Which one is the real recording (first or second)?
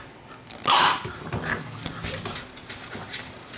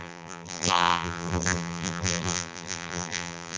first